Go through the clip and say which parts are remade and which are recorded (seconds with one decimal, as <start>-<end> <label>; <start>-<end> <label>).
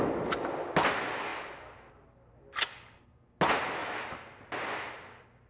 0.0-5.5 recorded